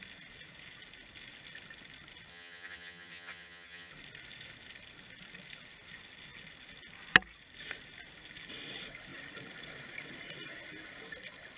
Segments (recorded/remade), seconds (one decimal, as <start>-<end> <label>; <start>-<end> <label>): 0.0-2.3 recorded; 2.3-3.9 remade; 3.9-11.6 recorded